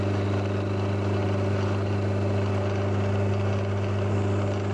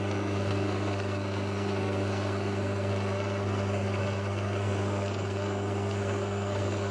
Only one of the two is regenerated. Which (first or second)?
second